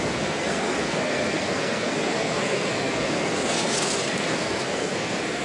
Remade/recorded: remade